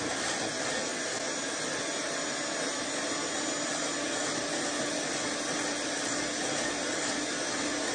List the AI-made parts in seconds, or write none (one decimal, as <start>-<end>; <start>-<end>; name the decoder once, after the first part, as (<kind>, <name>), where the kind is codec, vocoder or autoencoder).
none